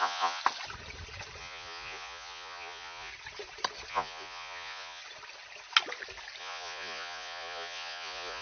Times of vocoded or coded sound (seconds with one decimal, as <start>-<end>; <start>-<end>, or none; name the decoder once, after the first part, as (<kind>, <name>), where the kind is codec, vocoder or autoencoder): 0.0-0.4 (vocoder, Vocos); 1.4-3.1; 3.9-5.0; 6.4-8.4